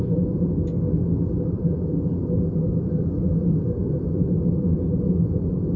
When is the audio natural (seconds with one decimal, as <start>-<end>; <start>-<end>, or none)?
0.0-5.8